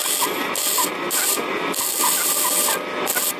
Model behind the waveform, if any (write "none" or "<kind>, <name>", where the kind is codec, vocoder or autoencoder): none